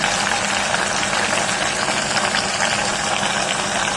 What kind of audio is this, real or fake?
real